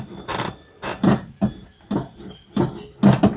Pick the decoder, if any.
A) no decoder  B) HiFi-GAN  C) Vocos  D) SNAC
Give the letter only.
A